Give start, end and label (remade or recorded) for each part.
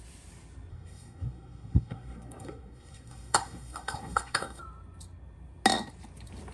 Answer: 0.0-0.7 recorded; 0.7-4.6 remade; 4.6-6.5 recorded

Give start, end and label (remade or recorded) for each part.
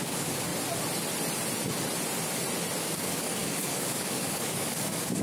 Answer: 0.0-0.5 remade; 0.5-2.8 recorded; 2.8-5.2 remade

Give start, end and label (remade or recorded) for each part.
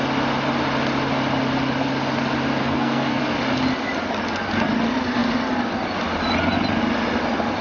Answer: 0.0-2.6 recorded; 2.6-3.2 remade; 3.2-7.6 recorded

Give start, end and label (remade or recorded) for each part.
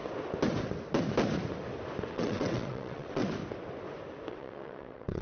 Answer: 0.0-2.1 recorded; 2.1-3.2 remade; 3.2-4.3 recorded; 4.3-5.2 remade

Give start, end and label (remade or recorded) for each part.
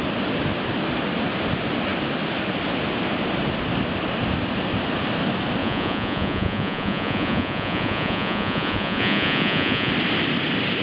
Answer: 0.0-5.6 recorded; 5.6-9.9 remade; 9.9-10.8 recorded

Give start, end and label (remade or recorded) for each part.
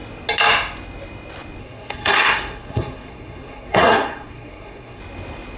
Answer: 0.0-1.6 recorded; 1.6-5.0 remade; 5.0-5.6 recorded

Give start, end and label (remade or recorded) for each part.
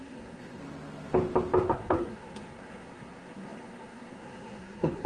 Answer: 0.0-0.6 remade; 0.6-1.7 recorded; 1.7-5.1 remade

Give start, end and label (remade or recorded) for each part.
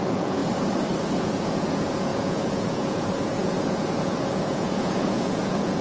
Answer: 0.0-0.4 remade; 0.4-1.2 recorded; 1.2-5.8 remade